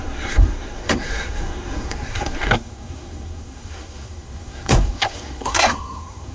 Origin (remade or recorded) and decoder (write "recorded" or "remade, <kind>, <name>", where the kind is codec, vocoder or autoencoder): remade, codec, SNAC